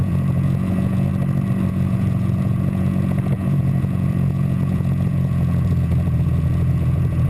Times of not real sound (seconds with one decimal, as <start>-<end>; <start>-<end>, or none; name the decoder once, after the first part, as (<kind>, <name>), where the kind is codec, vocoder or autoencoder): 0.0-1.1 (vocoder, Vocos); 1.7-7.3